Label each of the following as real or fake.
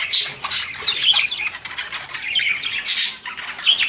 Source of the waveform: real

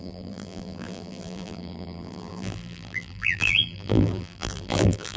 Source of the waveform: fake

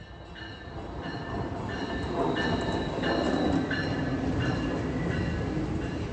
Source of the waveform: real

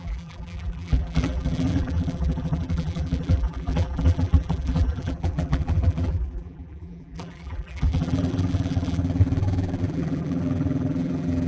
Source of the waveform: fake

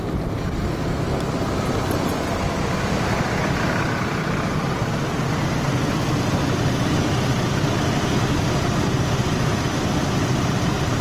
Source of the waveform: real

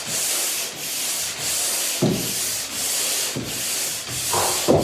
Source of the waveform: real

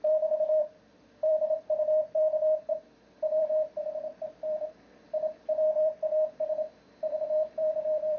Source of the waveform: fake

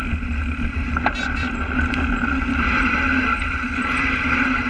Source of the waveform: fake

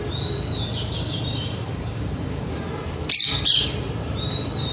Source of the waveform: fake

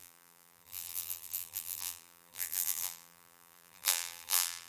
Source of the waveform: fake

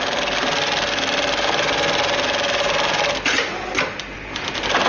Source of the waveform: real